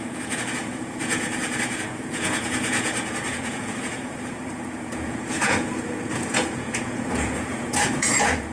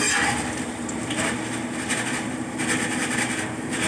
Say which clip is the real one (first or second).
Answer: second